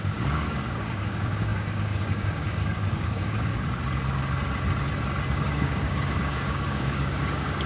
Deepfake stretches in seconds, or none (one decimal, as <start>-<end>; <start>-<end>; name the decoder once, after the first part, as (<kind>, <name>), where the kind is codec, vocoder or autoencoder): 0.0-3.5 (codec, DAC); 5.5-7.7

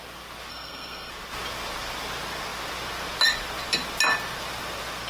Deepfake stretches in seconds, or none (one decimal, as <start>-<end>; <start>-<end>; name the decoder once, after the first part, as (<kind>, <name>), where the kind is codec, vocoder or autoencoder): 0.5-1.1 (codec, SNAC)

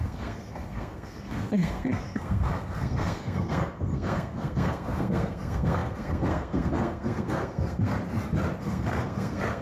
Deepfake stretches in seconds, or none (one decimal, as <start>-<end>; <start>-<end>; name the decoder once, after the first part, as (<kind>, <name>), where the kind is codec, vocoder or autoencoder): 0.0-7.9 (codec, SNAC); 8.6-9.6

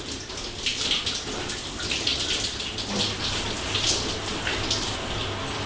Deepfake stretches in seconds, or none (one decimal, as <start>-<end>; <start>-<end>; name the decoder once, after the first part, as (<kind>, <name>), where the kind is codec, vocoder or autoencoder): none

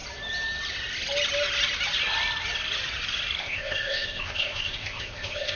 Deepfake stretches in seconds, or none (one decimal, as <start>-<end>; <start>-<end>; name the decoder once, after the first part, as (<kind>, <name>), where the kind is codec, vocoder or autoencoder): 3.4-5.6 (codec, ZipCodec)

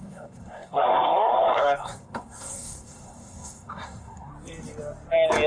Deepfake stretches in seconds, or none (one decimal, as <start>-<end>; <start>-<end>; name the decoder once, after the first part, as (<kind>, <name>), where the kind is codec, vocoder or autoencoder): 0.0-4.3 (codec, SNAC)

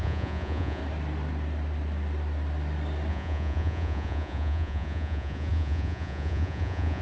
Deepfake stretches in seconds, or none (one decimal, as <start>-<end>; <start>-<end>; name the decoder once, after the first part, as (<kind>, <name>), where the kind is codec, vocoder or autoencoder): 0.0-0.8 (vocoder, Vocos); 3.1-7.0